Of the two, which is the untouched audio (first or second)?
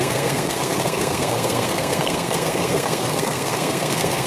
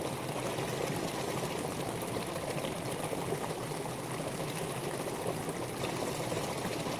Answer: second